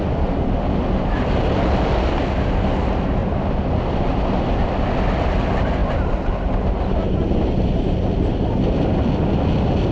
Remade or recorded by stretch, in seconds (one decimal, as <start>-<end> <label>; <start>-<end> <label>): 0.0-9.9 recorded